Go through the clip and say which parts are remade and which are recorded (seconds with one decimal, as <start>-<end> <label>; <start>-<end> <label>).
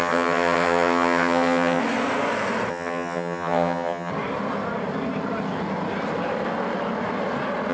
0.0-1.8 remade; 1.8-2.7 recorded; 2.7-4.1 remade; 4.1-7.7 recorded